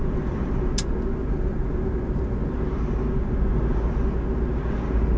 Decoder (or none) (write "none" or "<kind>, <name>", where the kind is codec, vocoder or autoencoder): none